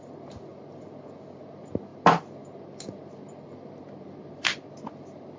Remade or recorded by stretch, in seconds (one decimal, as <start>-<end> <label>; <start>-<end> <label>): 0.0-5.4 recorded